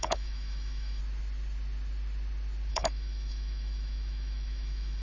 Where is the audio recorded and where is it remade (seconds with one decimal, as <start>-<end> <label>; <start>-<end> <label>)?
0.0-1.0 remade; 1.0-2.7 recorded; 2.7-5.0 remade